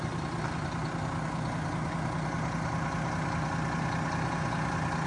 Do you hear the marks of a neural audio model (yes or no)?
no